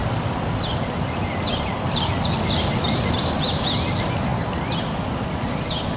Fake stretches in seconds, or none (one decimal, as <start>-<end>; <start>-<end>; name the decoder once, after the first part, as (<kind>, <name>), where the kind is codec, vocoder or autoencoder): 0.0-3.5 (vocoder, BigVGAN v2)